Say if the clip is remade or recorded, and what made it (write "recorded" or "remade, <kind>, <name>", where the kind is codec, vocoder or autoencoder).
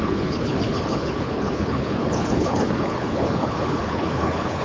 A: remade, codec, HILCodec